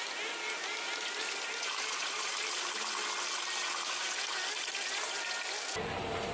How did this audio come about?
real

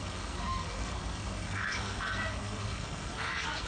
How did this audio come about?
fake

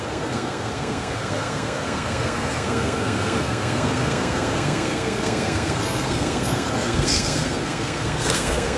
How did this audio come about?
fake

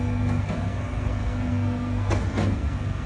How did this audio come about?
fake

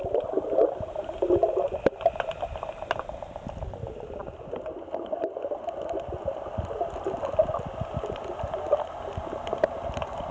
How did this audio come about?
real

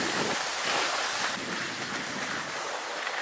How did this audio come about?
real